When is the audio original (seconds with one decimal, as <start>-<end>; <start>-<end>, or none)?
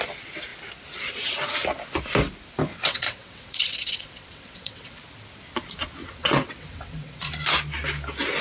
0.0-2.7; 5.0-6.0; 7.3-8.4